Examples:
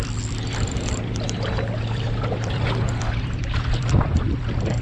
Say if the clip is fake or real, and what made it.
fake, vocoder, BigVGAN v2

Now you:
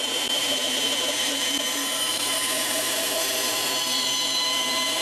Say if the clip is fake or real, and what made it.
fake, vocoder, BigVGAN v2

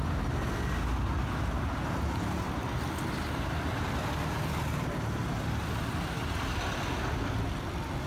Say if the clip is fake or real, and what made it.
real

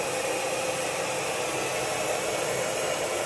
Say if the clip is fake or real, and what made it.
real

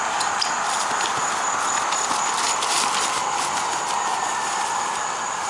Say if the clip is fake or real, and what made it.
real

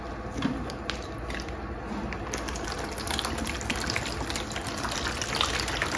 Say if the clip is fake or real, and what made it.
real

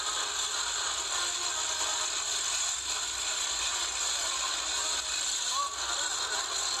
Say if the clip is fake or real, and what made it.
real